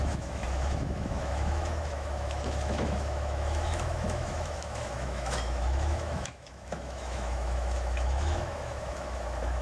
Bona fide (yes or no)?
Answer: no